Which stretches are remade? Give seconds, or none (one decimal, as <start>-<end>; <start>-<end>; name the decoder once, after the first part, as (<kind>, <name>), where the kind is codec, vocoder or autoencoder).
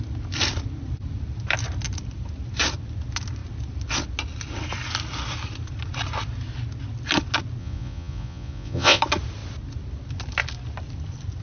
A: 7.6-9.0 (vocoder, Vocos)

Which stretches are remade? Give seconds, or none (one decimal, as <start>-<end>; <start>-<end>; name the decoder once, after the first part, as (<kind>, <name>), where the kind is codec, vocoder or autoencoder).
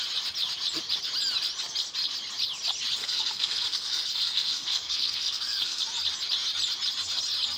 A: 3.0-5.8 (codec, SNAC)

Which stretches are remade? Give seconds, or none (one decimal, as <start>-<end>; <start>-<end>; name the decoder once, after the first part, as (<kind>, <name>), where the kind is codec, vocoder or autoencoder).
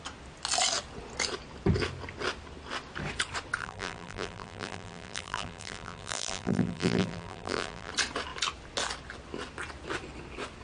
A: 3.6-7.9 (vocoder, BigVGAN v2)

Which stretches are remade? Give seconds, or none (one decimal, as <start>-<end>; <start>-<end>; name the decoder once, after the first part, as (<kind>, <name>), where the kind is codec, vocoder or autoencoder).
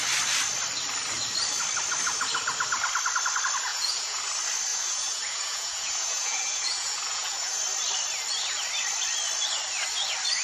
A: 3.7-4.2 (vocoder, Vocos); 4.7-7.6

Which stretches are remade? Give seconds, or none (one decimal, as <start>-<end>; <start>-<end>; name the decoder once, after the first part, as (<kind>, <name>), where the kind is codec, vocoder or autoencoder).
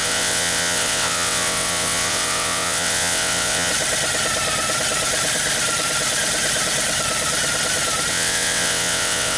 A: 0.0-3.7 (vocoder, WaveNeXt); 8.1-9.4